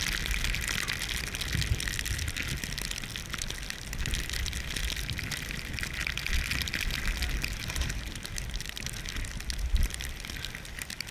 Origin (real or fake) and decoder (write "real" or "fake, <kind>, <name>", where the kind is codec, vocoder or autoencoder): real